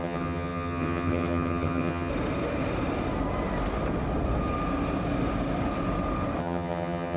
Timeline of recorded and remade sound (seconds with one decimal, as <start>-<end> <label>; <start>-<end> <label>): 0.0-2.1 remade; 2.1-6.4 recorded; 6.4-7.2 remade